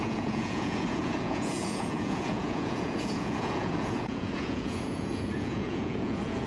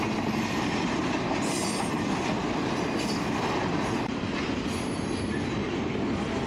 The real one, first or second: second